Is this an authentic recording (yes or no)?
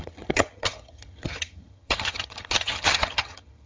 no